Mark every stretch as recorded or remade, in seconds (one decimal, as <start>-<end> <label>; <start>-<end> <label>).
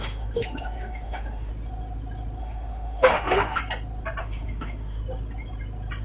0.0-1.5 remade; 1.5-2.4 recorded; 2.4-3.6 remade; 3.6-4.2 recorded; 4.2-5.0 remade; 5.0-6.0 recorded